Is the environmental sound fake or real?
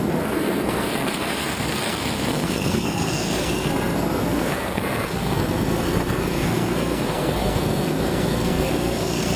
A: fake